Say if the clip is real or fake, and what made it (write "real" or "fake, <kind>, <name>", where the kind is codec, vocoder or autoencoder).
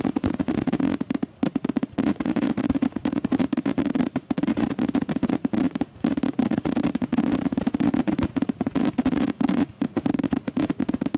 fake, vocoder, Vocos